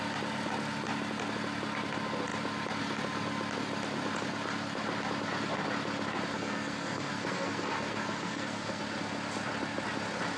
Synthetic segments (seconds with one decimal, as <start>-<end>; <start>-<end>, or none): 6.3-8.8